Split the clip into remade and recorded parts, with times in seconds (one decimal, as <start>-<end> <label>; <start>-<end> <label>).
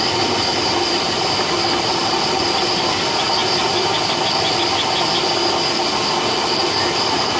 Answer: 0.0-0.5 recorded; 0.5-3.0 remade; 3.0-7.4 recorded